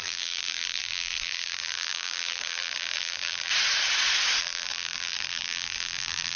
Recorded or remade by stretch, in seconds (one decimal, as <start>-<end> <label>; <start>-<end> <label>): 0.0-3.5 remade; 3.5-4.4 recorded; 4.4-6.4 remade